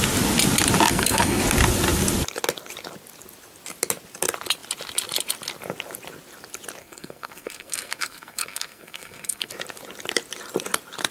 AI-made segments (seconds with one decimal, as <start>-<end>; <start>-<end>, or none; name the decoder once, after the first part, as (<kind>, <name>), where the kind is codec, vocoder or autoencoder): 0.9-1.4 (codec, SNAC); 6.8-9.5